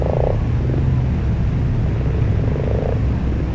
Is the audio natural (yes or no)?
yes